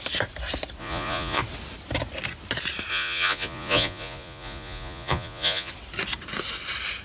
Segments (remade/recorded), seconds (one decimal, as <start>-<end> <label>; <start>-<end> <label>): 0.0-0.8 recorded; 0.8-1.4 remade; 1.4-2.9 recorded; 2.9-5.7 remade; 5.7-7.0 recorded

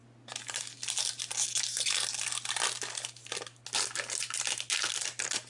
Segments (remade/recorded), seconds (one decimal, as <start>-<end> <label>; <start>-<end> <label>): 0.0-5.5 recorded

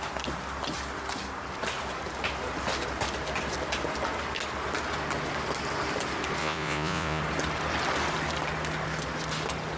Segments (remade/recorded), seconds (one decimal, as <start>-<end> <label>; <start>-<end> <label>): 0.0-6.4 recorded; 6.4-7.2 remade; 7.2-9.8 recorded

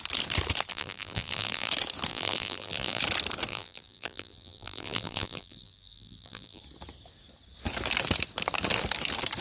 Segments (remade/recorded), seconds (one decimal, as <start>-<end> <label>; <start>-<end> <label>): 0.0-0.7 recorded; 0.7-1.7 remade; 1.7-2.1 recorded; 2.1-3.0 remade; 3.0-3.5 recorded; 3.5-6.6 remade; 6.6-9.4 recorded

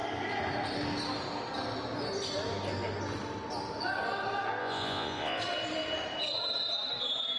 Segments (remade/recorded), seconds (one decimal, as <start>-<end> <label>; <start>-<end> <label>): 0.0-4.6 recorded; 4.6-5.4 remade; 5.4-7.4 recorded

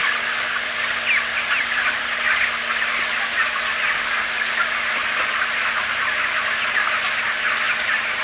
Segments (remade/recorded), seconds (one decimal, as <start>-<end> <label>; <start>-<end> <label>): 0.0-8.2 recorded

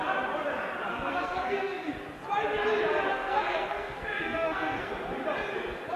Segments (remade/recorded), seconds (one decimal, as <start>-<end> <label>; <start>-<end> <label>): 0.0-0.9 recorded; 0.9-1.9 remade; 1.9-3.1 recorded; 3.1-4.9 remade; 4.9-6.0 recorded